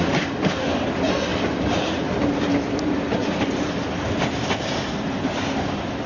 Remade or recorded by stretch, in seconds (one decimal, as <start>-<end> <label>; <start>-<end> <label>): 0.0-6.1 recorded